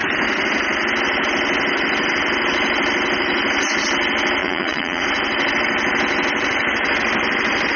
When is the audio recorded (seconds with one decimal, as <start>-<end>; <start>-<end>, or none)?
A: 0.0-4.4; 5.0-7.8